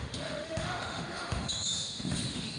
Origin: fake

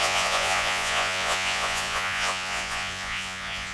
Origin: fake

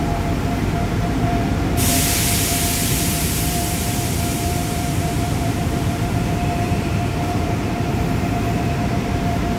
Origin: fake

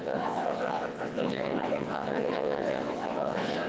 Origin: fake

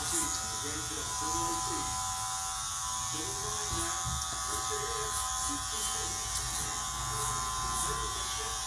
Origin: real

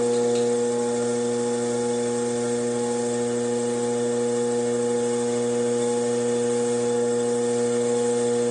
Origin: real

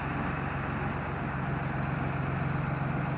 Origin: real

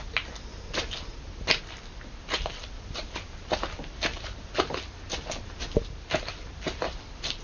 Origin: real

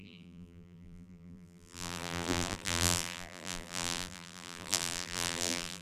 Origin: fake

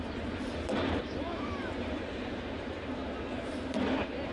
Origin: fake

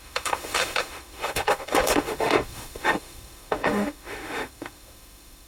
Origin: fake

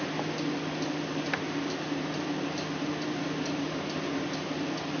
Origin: real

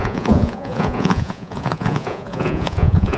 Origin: fake